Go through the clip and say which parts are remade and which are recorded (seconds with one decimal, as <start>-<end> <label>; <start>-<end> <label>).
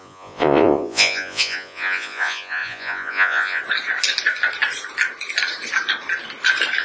0.0-3.6 remade; 3.6-6.8 recorded